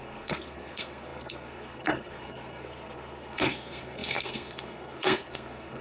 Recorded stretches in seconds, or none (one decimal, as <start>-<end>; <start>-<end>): none